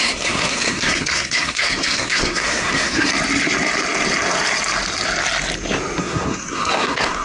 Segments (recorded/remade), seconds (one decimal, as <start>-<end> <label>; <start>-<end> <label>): 0.0-3.1 remade; 3.1-6.0 recorded; 6.0-7.2 remade